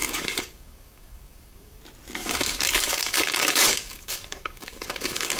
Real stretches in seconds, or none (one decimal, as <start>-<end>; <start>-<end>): 1.8-2.2